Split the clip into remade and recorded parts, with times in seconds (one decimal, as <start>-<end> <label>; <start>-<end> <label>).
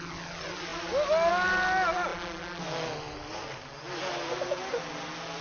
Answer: 0.0-5.4 recorded